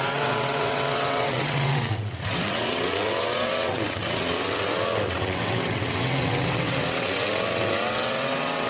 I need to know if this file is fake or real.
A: fake